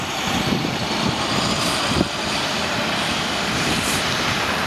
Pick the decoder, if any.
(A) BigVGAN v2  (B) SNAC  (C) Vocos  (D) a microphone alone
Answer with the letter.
A